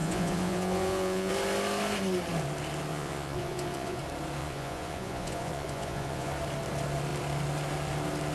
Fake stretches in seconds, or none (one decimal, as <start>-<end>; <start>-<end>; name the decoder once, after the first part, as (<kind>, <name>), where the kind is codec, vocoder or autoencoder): 0.0-1.3 (vocoder, Vocos); 2.9-4.0; 4.4-6.3